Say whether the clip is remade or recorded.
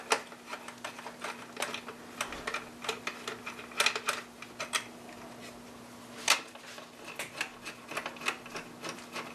recorded